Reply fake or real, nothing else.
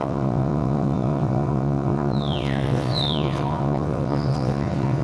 fake